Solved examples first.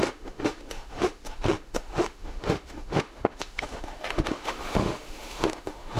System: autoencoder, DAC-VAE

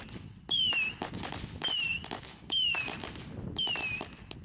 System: none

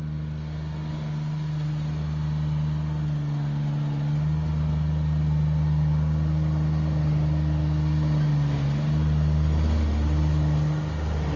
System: none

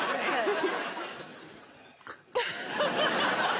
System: none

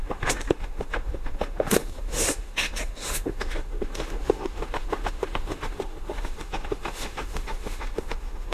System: autoencoder, DAC-VAE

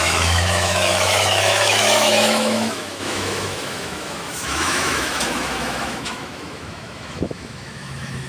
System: autoencoder, DAC-VAE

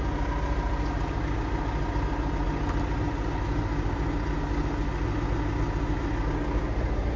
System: none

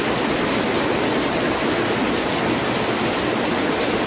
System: none